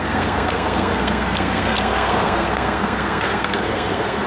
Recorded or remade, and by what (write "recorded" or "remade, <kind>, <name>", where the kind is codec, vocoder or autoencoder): remade, codec, SNAC